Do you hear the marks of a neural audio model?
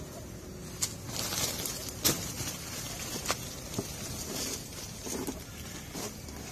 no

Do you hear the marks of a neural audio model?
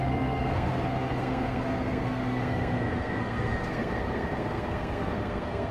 yes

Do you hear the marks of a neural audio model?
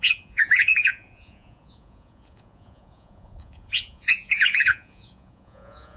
yes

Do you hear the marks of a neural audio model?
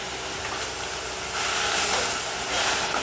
no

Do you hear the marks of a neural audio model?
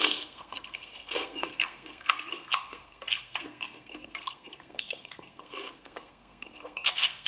yes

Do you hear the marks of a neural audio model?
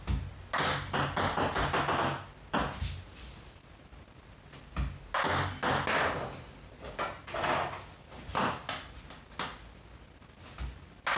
no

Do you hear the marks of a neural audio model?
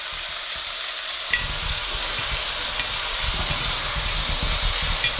no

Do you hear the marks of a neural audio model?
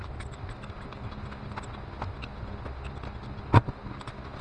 no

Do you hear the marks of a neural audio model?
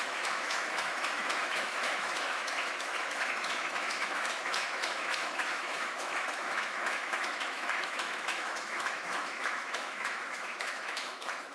yes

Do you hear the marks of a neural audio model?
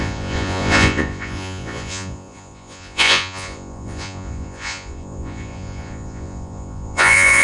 yes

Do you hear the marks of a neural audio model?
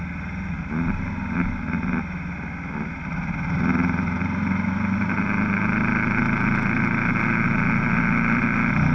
no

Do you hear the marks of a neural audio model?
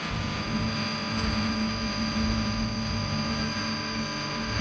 no